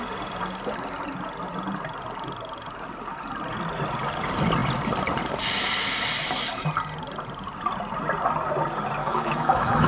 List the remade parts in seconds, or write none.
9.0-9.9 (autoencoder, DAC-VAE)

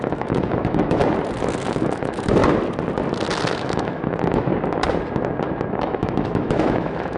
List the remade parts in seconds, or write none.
0.0-1.0 (autoencoder, DAC-VAE); 1.7-2.4; 3.5-4.5; 5.7-7.2

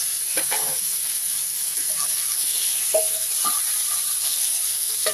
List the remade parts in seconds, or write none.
0.0-3.3 (codec, SNAC); 4.2-5.1

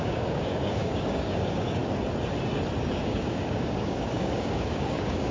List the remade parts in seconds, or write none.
0.0-1.8 (codec, DAC); 2.9-5.3

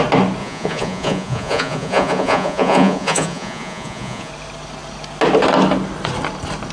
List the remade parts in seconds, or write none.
0.4-4.3 (vocoder, Vocos)

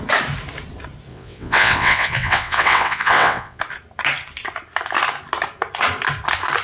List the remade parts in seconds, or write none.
1.1-3.6 (vocoder, WaveNeXt)

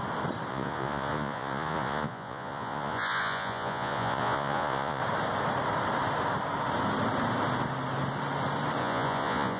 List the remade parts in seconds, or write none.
0.5-5.0 (vocoder, Vocos); 8.8-9.6